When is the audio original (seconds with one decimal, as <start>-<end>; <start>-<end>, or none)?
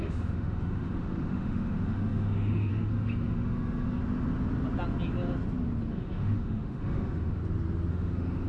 4.0-5.9; 7.4-7.9